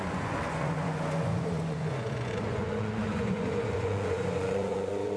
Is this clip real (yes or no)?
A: no